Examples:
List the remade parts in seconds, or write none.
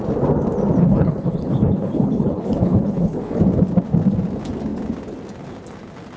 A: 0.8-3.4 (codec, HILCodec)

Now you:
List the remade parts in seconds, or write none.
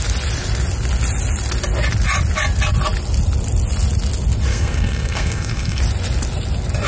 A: 4.5-5.8 (codec, SNAC)